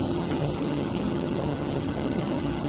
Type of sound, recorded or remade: remade